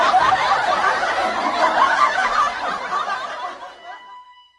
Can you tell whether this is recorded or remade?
recorded